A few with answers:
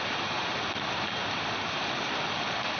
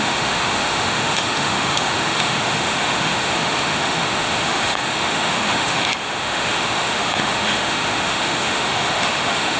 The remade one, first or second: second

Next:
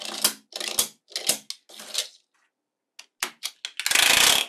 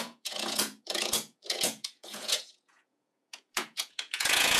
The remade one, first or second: second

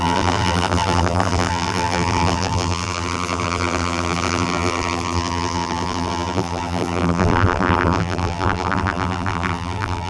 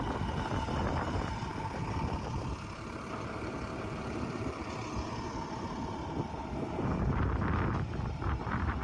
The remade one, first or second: first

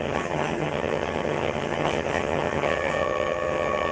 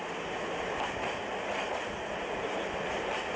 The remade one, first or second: first